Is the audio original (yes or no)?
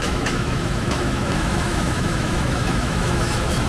no